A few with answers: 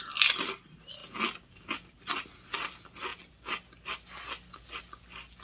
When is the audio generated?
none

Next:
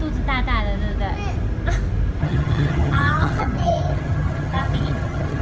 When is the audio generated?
2.2-5.4 (vocoder, HiFi-GAN)

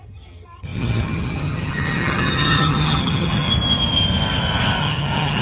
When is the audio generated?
0.0-3.5 (vocoder, HiFi-GAN); 4.8-5.4

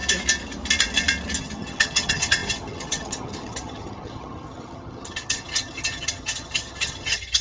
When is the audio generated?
1.4-7.4 (vocoder, HiFi-GAN)

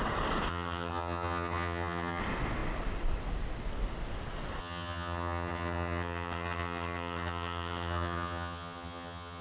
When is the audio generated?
0.5-2.2 (vocoder, HiFi-GAN); 4.6-9.4